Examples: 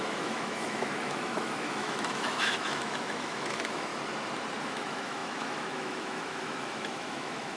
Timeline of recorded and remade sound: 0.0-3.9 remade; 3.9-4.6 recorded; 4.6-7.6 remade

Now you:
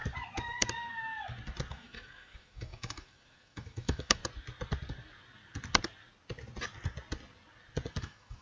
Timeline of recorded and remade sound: 0.0-1.7 recorded; 1.7-4.2 remade; 4.2-8.0 recorded; 8.0-8.4 remade

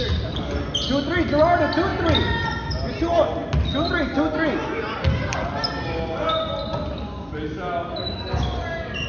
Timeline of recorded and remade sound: 0.0-9.1 recorded

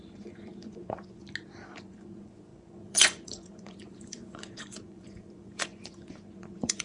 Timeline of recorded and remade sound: 0.0-1.2 remade; 1.2-1.8 recorded; 1.8-6.8 remade